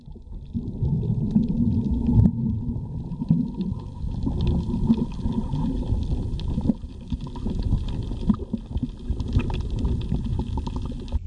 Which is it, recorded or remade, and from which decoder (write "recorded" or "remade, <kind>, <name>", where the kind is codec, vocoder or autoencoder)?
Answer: recorded